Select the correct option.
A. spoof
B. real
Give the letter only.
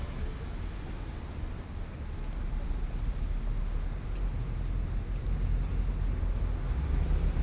B